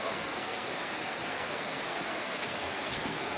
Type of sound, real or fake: fake